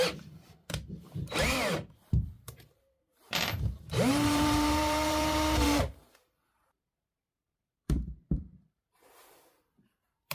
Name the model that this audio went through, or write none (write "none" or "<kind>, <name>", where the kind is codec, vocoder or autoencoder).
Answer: vocoder, BigVGAN v2